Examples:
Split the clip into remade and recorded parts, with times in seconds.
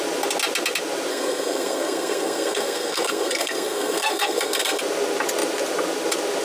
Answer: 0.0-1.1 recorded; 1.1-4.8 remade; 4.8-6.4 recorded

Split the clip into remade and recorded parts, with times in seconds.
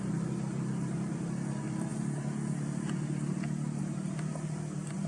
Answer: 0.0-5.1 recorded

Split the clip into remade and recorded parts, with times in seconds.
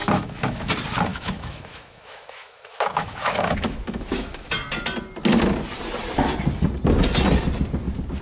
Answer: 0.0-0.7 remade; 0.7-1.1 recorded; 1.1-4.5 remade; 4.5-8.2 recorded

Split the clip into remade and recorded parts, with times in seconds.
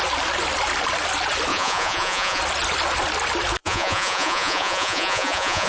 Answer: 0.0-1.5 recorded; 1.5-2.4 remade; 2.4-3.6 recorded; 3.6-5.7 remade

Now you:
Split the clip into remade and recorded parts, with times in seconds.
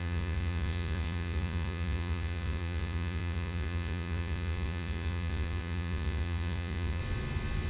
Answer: 0.0-7.0 remade; 7.0-7.7 recorded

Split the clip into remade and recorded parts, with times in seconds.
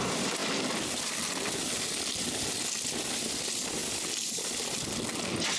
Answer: 0.0-5.6 recorded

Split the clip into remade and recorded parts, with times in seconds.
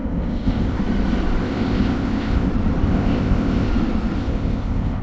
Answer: 0.0-0.8 remade; 0.8-1.4 recorded; 1.4-2.5 remade; 2.5-2.9 recorded; 2.9-3.7 remade; 3.7-4.2 recorded; 4.2-5.0 remade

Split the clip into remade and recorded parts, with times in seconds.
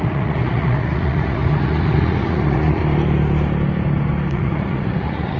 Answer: 0.0-2.8 remade; 2.8-4.3 recorded; 4.3-5.4 remade